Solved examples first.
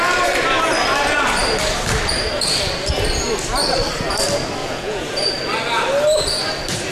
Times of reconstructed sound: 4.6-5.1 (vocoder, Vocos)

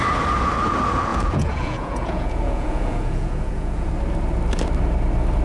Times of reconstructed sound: 1.1-3.9 (vocoder, Vocos)

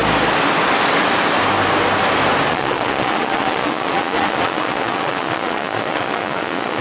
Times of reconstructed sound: 2.5-6.8 (vocoder, Vocos)